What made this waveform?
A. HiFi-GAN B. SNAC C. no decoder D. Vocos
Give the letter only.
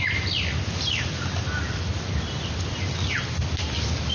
C